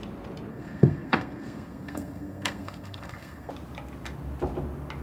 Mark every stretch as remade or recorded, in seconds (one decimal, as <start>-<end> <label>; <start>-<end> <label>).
0.0-0.5 recorded; 0.5-3.5 remade; 3.5-5.0 recorded